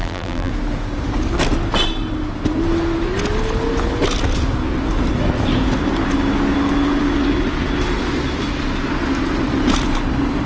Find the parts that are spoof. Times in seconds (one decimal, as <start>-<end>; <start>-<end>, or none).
0.0-0.5